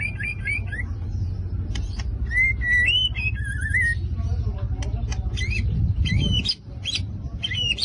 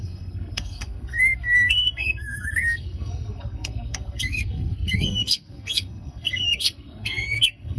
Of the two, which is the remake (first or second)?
second